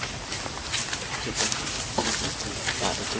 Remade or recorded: recorded